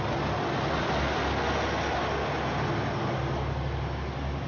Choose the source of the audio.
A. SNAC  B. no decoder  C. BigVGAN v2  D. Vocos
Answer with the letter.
B